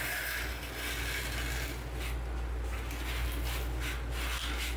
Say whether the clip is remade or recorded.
recorded